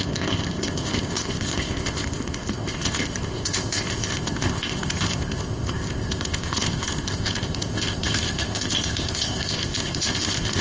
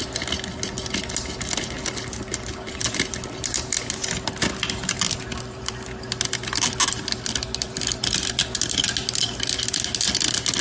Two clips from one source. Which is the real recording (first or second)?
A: second